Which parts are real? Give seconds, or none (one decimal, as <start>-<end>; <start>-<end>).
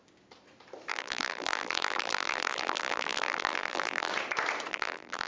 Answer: 0.0-0.9; 4.1-4.7